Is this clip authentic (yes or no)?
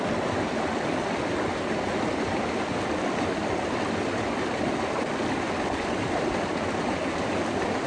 yes